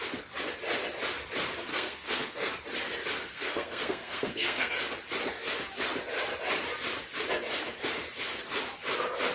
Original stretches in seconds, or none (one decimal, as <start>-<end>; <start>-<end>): 0.0-1.7; 2.5-3.3; 4.7-9.3